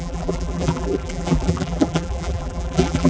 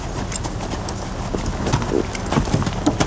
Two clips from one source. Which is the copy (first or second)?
first